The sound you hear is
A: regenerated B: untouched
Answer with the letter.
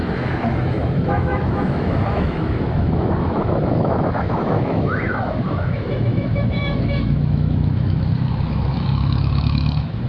A